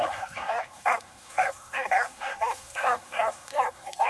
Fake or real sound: fake